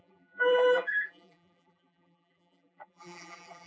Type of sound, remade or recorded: remade